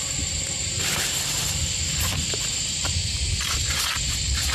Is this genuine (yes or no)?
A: no